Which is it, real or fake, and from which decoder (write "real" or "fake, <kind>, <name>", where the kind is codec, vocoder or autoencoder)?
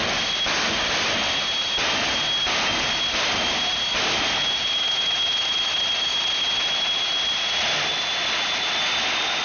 real